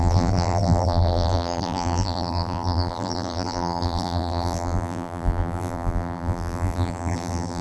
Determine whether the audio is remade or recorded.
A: remade